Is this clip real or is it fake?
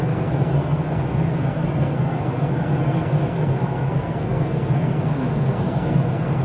fake